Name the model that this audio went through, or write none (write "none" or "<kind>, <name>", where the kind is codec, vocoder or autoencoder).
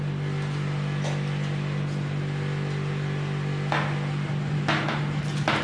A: none